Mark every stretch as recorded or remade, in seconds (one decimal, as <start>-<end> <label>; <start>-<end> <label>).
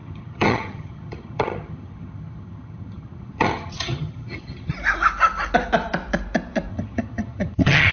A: 0.0-4.7 remade; 4.7-6.7 recorded; 6.7-7.9 remade